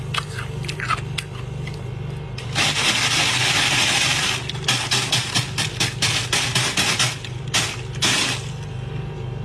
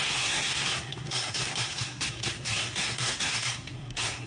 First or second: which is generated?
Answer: second